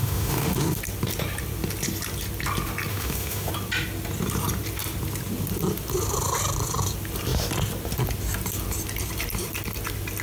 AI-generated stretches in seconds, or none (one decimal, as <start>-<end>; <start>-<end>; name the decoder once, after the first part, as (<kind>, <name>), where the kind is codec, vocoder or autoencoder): 0.0-0.8 (autoencoder, DAC-VAE); 2.9-3.5